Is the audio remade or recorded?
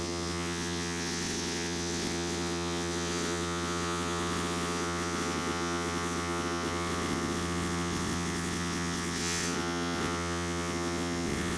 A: remade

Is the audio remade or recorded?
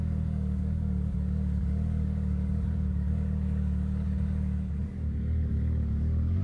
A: remade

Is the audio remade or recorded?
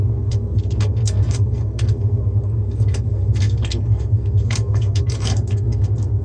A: remade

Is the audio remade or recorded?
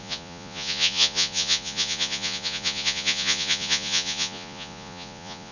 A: remade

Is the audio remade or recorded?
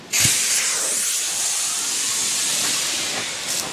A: recorded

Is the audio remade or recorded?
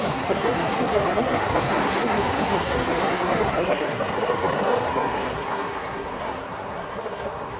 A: remade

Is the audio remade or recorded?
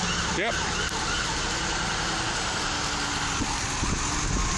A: recorded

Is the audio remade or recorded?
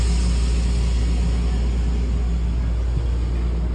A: recorded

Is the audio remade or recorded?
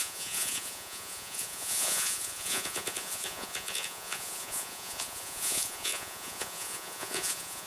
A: remade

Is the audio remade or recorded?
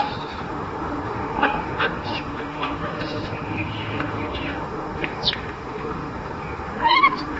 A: remade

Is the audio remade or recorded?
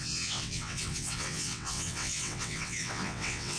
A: remade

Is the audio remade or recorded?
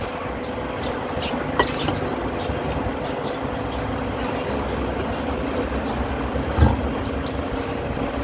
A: recorded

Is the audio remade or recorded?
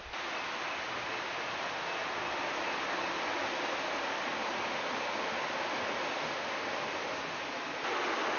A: recorded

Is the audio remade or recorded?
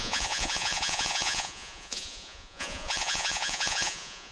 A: remade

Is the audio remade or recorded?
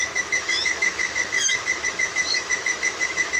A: remade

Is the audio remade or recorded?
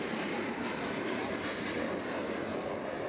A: recorded